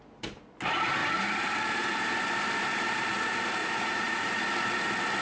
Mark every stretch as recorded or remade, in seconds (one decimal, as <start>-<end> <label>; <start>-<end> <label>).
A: 0.0-3.6 recorded; 3.6-4.4 remade; 4.4-5.2 recorded